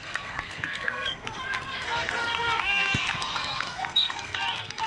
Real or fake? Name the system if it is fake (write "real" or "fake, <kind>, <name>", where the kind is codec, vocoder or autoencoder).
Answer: fake, codec, SNAC